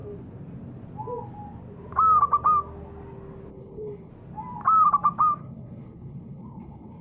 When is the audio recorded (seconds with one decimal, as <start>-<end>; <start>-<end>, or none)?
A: 0.0-3.5; 4.1-5.4